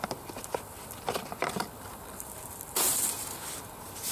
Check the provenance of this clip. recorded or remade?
remade